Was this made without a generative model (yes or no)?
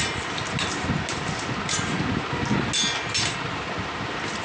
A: yes